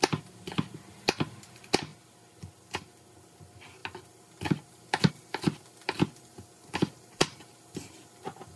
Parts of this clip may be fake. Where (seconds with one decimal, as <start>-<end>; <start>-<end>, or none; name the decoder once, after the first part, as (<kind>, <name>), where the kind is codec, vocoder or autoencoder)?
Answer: none